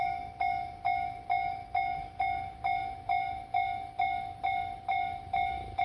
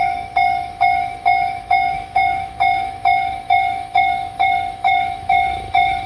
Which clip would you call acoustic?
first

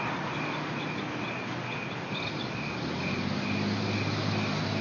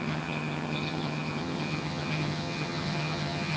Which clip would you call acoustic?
first